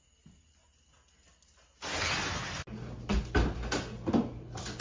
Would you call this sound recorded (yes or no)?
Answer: yes